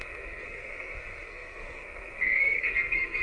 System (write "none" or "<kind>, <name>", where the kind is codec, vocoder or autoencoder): codec, SNAC